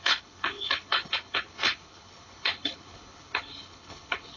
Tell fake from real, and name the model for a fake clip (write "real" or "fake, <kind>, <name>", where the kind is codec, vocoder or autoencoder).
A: fake, codec, HILCodec